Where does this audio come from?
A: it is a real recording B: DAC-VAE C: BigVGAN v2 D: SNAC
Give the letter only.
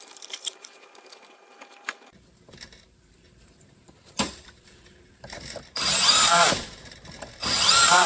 C